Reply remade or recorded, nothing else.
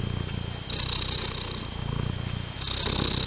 recorded